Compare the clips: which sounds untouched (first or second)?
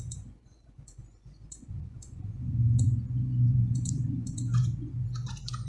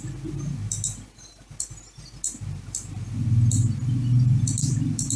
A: second